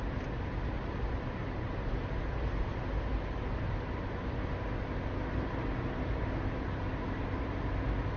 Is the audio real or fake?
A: real